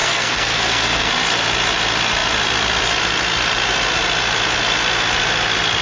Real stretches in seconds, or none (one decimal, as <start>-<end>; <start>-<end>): 1.1-5.8